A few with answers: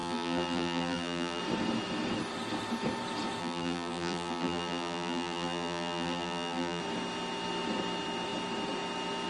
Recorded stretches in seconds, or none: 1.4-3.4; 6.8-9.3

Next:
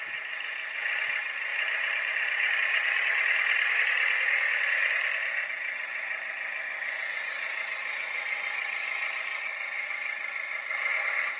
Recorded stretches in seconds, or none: 0.0-1.5; 2.5-11.4

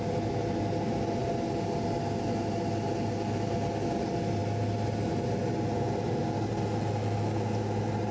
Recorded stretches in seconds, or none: 0.0-8.1

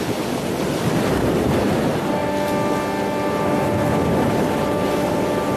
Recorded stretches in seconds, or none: 0.0-5.6

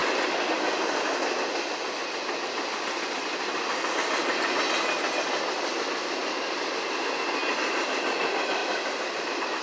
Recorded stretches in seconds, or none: 0.0-6.2; 7.1-8.6